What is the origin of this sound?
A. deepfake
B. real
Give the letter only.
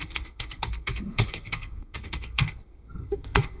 A